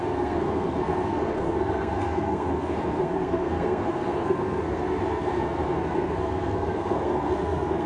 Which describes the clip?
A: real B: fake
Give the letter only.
B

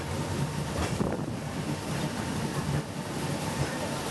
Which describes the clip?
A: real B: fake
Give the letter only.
A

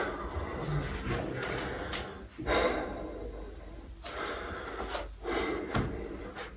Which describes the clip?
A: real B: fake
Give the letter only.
A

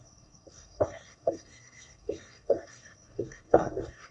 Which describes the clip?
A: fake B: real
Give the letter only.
A